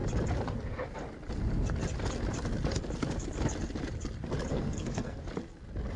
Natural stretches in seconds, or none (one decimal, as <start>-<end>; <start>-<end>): 0.0-4.5; 5.2-6.0